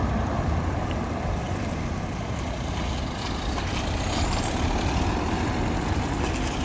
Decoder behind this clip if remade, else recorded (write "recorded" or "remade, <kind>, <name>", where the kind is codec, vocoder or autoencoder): recorded